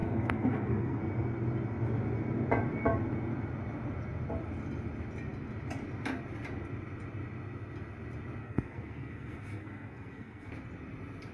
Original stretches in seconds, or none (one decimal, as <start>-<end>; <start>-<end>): 1.0-8.4; 10.5-11.3